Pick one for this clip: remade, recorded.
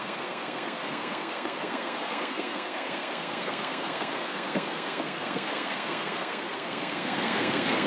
remade